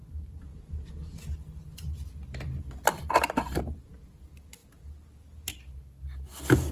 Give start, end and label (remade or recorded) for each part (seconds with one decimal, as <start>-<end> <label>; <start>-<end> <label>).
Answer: 0.0-6.7 recorded